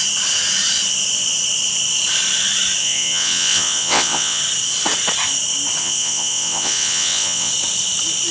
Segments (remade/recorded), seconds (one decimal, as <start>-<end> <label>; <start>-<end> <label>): 0.0-2.8 recorded; 2.8-4.4 remade; 4.4-5.8 recorded; 5.8-7.5 remade; 7.5-8.3 recorded